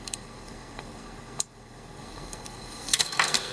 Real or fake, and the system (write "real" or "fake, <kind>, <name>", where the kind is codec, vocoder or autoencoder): fake, codec, SNAC